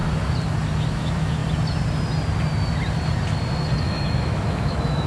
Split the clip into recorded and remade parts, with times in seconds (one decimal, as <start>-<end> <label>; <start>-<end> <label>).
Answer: 0.0-0.9 recorded; 0.9-1.4 remade; 1.4-3.8 recorded; 3.8-5.1 remade